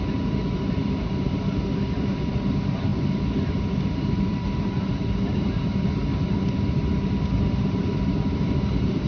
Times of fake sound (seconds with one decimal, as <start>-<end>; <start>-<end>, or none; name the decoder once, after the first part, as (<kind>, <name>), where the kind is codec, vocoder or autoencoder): 0.0-9.1 (vocoder, BigVGAN v2)